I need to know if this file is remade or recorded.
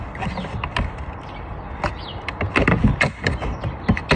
recorded